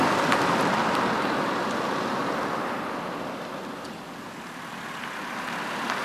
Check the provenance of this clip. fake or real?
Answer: real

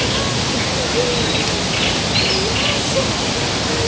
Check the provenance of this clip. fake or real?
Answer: real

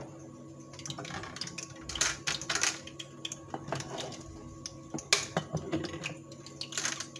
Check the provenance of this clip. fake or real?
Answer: real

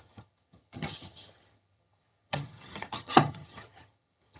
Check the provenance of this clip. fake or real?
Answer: fake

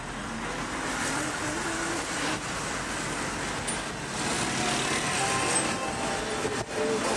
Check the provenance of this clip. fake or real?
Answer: real